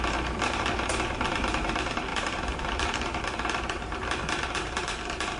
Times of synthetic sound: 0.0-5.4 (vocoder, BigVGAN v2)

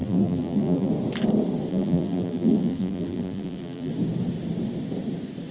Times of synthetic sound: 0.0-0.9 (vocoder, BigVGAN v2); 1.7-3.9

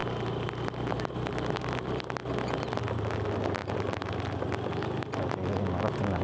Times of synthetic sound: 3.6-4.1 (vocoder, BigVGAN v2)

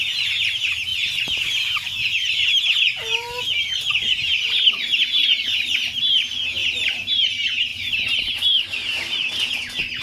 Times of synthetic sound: 0.9-6.1 (vocoder, BigVGAN v2); 6.6-7.3; 7.7-9.5

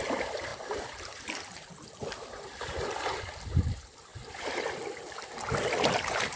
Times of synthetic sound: 0.5-1.2 (vocoder, BigVGAN v2); 4.1-4.6

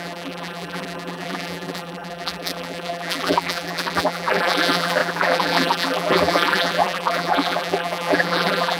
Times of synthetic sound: 0.0-8.8 (vocoder, BigVGAN v2)

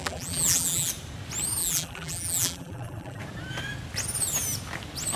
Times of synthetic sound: 0.0-0.9 (vocoder, BigVGAN v2); 1.6-3.2